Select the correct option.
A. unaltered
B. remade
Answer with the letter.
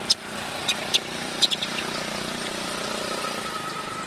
B